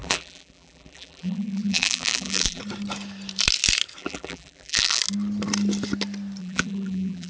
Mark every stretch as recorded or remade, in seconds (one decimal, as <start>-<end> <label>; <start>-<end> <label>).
0.0-2.6 remade; 2.6-4.0 recorded; 4.0-5.0 remade; 5.0-6.4 recorded; 6.4-7.3 remade